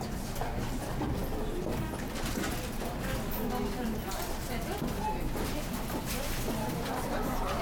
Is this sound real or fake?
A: real